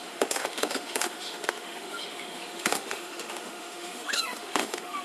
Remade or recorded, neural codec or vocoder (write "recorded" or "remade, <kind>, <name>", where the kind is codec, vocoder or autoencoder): remade, autoencoder, DAC-VAE